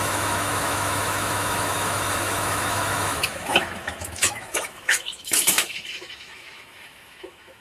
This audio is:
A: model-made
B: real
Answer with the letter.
A